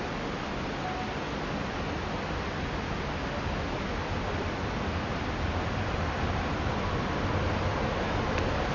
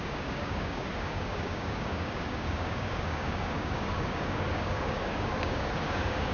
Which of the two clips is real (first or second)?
first